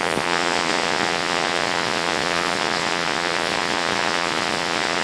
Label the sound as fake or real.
fake